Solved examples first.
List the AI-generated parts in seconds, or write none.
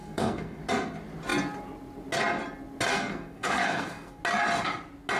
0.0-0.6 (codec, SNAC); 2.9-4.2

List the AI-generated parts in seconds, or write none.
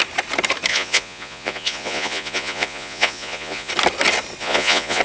0.7-3.7 (vocoder, Vocos); 4.4-5.0